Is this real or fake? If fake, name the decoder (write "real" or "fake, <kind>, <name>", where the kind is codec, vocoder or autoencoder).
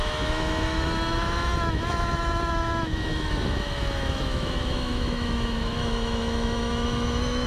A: fake, autoencoder, DAC-VAE